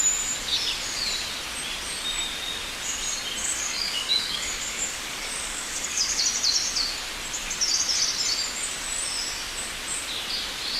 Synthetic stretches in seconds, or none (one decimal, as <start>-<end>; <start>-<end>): 3.4-6.2